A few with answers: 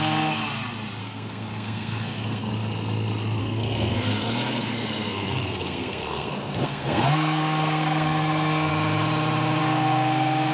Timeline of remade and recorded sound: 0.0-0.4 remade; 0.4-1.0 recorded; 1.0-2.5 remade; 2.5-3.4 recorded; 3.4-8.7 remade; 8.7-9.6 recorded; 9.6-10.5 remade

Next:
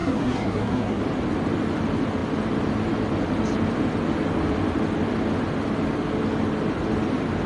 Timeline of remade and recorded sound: 0.0-1.0 remade; 1.0-7.5 recorded

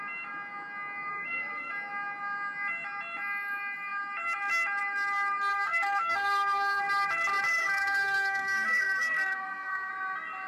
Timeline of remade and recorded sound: 0.0-1.1 recorded; 1.1-1.7 remade; 1.7-5.5 recorded; 5.5-6.8 remade; 6.8-7.6 recorded; 7.6-9.9 remade; 9.9-10.5 recorded

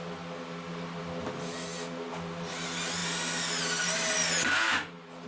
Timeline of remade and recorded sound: 0.0-5.3 recorded

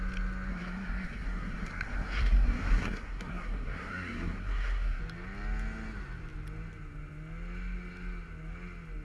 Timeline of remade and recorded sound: 0.0-0.5 recorded; 0.5-5.0 remade; 5.0-9.0 recorded